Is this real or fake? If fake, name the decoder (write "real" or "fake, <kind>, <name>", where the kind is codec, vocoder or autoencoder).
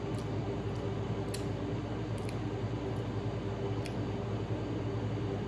real